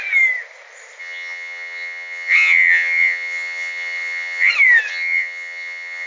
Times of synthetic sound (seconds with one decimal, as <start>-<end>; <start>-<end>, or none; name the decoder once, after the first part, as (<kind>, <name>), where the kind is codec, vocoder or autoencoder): 1.0-4.5 (vocoder, WaveNeXt); 4.9-6.1